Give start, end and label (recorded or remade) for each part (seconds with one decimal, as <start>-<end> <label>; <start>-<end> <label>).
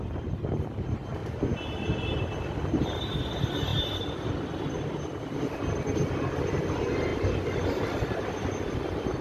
0.0-1.2 remade; 1.2-2.4 recorded; 2.4-3.7 remade; 3.7-4.3 recorded; 4.3-9.2 remade